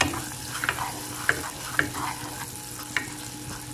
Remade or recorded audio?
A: recorded